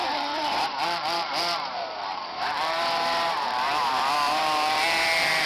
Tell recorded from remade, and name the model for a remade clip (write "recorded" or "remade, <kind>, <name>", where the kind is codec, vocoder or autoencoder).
remade, vocoder, BigVGAN v2